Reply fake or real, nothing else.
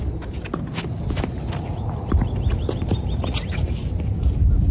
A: real